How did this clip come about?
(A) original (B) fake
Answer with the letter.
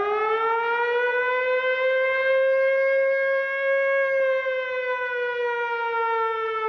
A